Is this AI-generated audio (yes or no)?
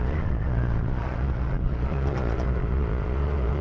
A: yes